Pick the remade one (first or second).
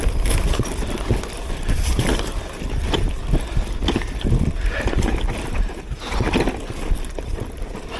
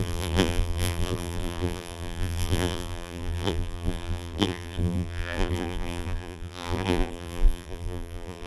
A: second